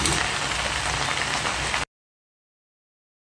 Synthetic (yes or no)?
no